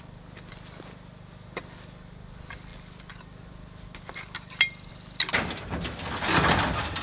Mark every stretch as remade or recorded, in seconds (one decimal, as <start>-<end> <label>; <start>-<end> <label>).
0.0-7.0 recorded